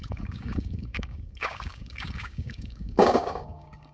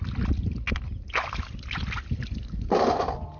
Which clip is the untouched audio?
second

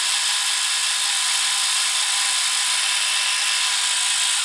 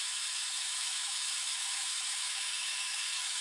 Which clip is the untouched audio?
first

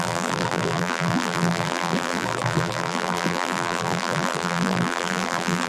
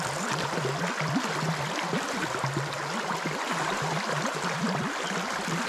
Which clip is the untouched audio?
second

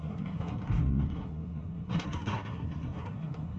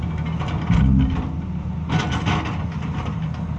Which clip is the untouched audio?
second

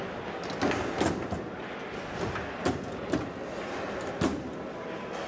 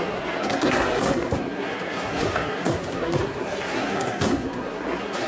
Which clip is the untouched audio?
first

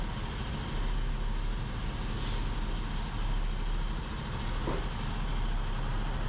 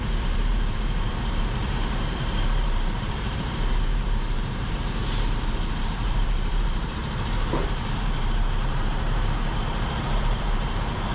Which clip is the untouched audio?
first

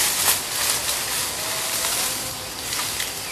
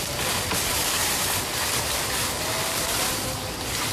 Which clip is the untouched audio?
first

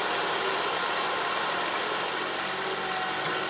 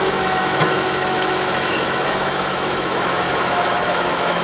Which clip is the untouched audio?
first